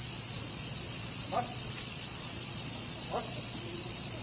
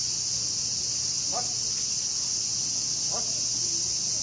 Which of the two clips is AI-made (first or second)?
first